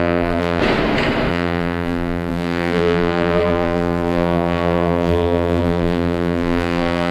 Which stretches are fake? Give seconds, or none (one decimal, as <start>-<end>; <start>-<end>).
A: 0.0-0.6; 1.3-7.1